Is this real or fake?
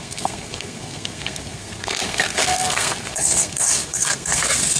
fake